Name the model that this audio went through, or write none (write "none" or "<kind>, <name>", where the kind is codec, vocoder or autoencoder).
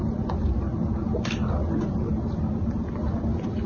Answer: none